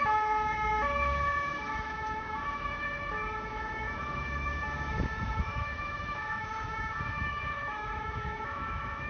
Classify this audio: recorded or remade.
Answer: remade